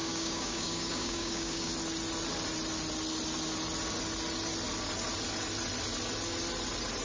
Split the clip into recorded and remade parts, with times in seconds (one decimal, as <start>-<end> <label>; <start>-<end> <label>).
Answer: 0.0-1.7 remade; 1.7-7.0 recorded